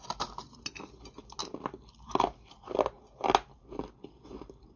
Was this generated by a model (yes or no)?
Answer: no